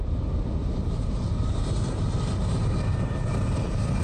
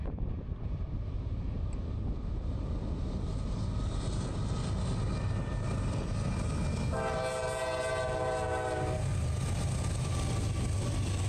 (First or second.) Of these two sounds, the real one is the second